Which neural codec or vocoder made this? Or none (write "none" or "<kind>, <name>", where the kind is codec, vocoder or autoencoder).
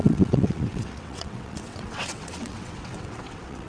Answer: vocoder, WaveNeXt